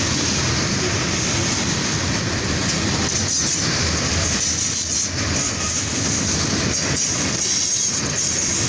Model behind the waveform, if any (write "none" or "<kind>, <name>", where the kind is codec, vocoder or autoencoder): none